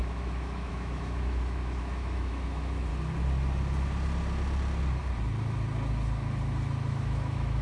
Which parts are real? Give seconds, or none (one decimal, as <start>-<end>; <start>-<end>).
2.9-6.9